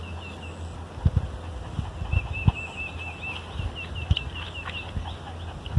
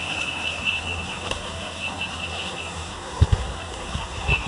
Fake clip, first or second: second